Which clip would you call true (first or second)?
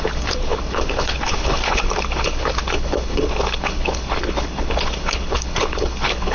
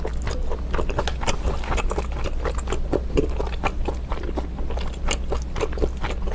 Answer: second